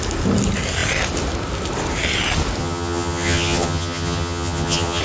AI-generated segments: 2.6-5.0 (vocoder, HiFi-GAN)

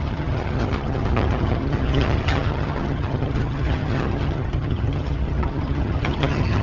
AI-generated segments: 0.0-6.6 (vocoder, HiFi-GAN)